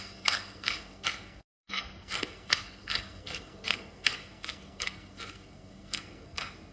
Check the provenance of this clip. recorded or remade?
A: remade